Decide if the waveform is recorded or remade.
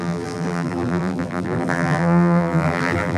remade